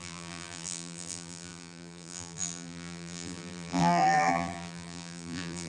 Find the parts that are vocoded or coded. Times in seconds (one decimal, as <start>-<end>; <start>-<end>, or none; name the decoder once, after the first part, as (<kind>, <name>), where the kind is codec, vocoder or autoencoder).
0.0-5.7 (vocoder, BigVGAN v2)